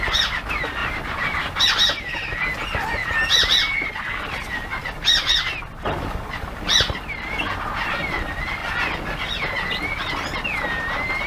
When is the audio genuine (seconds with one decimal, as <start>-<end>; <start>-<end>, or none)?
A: 0.0-0.8; 1.6-11.3